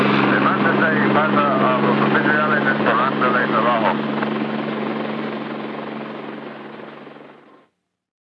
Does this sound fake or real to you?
real